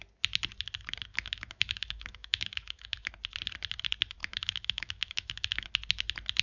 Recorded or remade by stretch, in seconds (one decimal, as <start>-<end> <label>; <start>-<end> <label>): 0.0-1.1 recorded; 1.1-3.1 remade; 3.1-4.2 recorded; 4.2-5.7 remade; 5.7-6.4 recorded